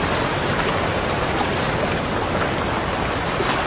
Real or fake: real